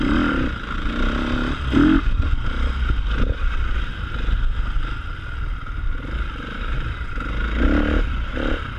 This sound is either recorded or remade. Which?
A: recorded